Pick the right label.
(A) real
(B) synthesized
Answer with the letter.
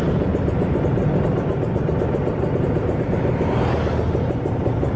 A